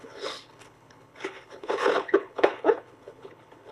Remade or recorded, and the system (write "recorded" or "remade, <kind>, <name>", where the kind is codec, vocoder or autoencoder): remade, codec, HILCodec